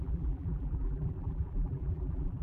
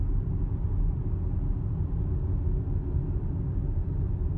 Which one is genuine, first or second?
second